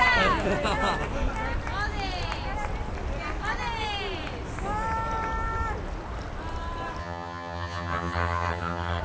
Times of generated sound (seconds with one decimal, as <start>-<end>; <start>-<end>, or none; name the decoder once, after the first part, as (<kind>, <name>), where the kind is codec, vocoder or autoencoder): 7.0-9.0 (vocoder, HiFi-GAN)